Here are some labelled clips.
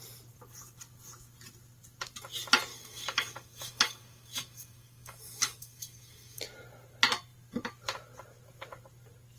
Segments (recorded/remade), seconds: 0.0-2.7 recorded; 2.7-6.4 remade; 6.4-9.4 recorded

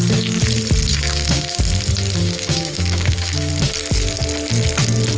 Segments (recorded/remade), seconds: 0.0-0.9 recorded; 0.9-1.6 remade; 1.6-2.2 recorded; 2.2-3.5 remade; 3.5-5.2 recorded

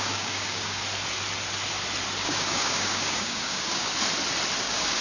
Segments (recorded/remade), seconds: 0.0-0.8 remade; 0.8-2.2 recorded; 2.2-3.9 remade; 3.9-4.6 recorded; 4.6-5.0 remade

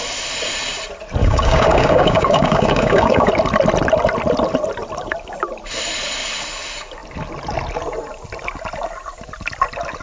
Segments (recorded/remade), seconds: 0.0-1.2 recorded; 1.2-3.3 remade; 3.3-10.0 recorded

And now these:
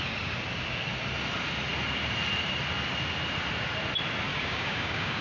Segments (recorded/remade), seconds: 0.0-4.3 recorded; 4.3-5.2 remade

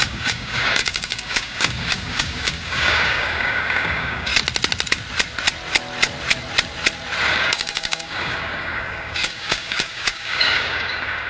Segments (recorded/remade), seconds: 0.0-4.3 remade; 4.3-7.3 recorded; 7.3-11.3 remade